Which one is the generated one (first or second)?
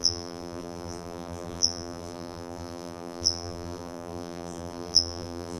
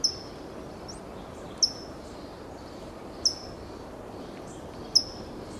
first